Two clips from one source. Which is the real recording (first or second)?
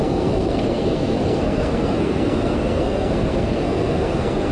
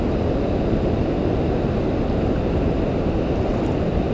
second